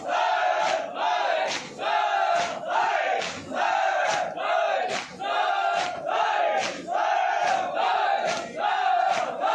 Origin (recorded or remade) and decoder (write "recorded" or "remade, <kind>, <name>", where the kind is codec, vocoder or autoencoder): recorded